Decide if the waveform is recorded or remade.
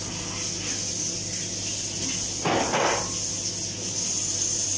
recorded